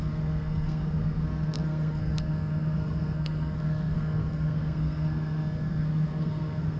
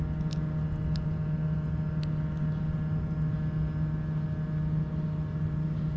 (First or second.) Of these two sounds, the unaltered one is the second